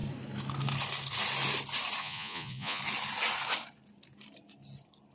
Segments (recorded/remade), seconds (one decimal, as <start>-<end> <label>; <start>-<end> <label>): 0.0-2.0 recorded; 2.0-2.8 remade; 2.8-5.1 recorded